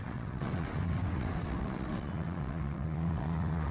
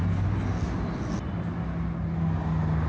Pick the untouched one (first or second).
second